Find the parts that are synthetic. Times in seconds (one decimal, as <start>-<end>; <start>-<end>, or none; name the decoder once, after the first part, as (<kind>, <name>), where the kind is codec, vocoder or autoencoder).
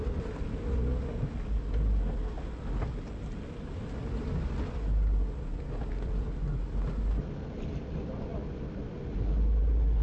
none